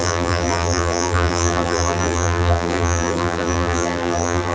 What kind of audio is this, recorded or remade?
remade